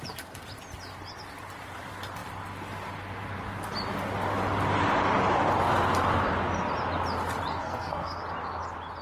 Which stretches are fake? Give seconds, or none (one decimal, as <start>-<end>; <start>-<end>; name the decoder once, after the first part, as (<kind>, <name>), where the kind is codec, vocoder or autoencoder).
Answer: 7.5-8.2 (codec, SNAC)